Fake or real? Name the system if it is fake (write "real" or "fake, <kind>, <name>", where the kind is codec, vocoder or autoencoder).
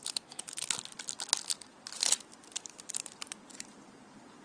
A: real